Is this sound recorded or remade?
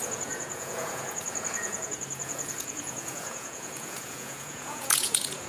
remade